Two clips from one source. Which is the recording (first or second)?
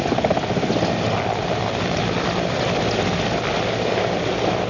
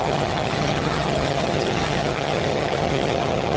first